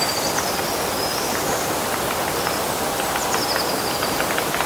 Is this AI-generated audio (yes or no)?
no